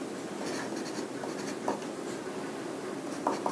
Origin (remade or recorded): recorded